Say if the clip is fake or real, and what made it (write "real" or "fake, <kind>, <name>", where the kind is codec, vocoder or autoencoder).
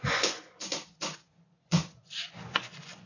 fake, vocoder, Vocos